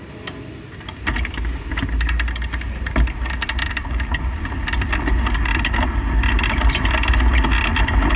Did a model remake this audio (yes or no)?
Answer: no